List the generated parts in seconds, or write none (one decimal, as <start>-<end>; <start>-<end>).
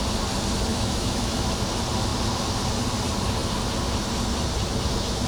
0.7-1.5